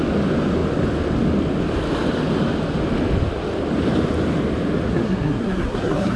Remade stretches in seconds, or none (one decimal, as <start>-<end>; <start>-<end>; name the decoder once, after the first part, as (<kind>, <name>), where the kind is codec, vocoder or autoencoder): 4.9-6.2 (codec, SNAC)